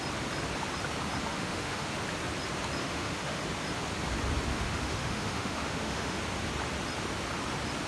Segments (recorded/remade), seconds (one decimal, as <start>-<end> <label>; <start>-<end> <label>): 0.0-1.3 recorded; 1.3-1.9 remade; 1.9-2.8 recorded; 2.8-3.4 remade; 3.4-4.5 recorded; 4.5-6.2 remade; 6.2-7.9 recorded